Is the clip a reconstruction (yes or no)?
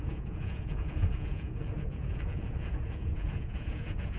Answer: yes